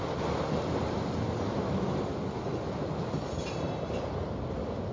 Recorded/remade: recorded